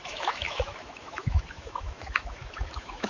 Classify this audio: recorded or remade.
remade